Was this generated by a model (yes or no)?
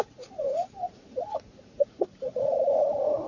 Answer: yes